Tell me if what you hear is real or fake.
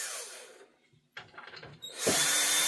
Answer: fake